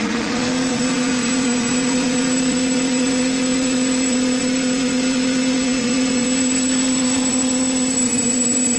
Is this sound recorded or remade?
remade